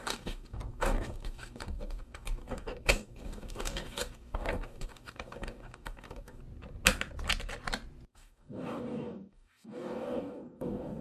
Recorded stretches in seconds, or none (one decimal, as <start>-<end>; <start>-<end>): 6.4-8.1

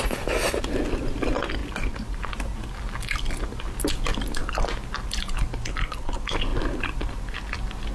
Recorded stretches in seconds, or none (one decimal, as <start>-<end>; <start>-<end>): 0.0-7.9

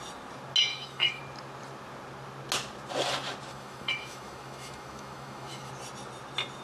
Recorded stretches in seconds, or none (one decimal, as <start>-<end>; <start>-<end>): 0.0-0.7; 1.2-3.5; 5.7-6.6

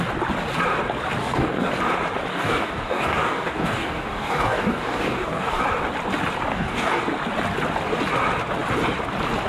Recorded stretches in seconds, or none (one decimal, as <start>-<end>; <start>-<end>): 0.0-1.2; 1.7-2.3; 5.6-6.5; 7.0-9.5

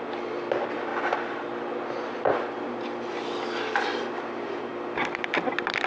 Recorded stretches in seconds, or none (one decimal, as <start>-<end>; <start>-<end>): 0.0-5.9

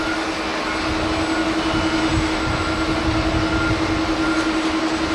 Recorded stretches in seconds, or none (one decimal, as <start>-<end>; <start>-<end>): 0.0-5.1

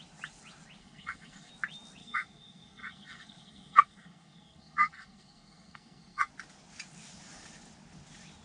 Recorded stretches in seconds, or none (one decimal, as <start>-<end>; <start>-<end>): 0.0-0.8; 1.5-2.0; 6.3-8.4

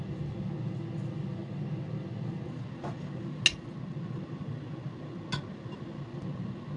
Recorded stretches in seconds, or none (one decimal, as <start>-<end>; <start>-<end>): 0.0-6.8